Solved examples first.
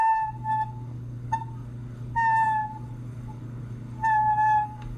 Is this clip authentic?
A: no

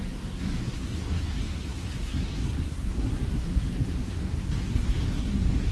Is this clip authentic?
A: no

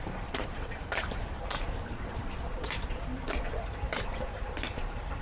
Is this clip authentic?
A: no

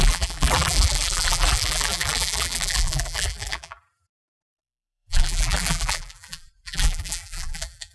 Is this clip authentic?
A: no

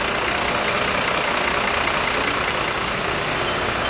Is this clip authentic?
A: yes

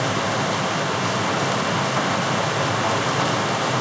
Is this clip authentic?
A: yes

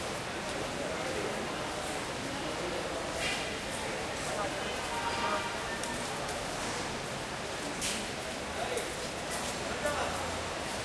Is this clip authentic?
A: yes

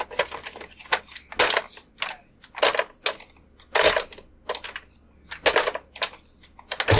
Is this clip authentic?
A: yes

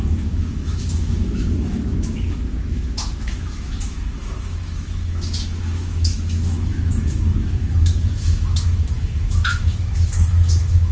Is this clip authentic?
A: no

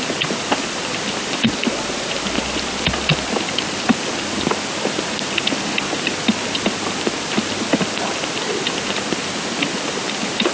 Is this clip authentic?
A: yes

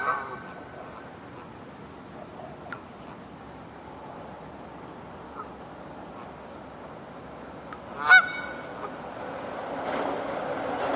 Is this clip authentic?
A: yes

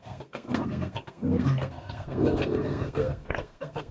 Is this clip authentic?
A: no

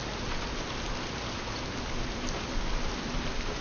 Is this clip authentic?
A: yes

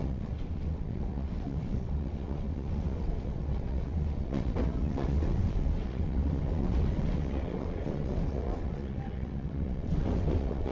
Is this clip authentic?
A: no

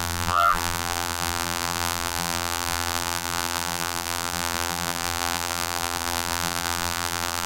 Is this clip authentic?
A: no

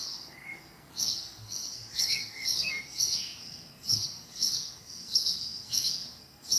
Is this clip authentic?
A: no